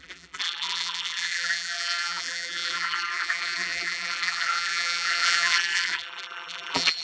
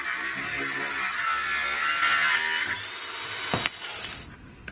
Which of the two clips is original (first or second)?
second